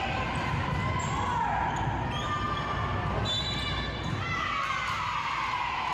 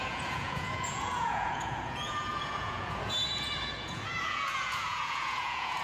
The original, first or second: first